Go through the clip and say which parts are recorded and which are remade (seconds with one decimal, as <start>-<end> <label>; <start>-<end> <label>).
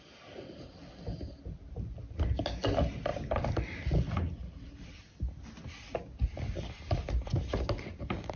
0.0-8.4 recorded